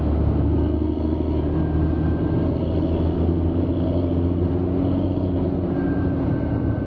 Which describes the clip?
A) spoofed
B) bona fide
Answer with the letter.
B